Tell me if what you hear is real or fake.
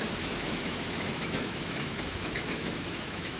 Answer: fake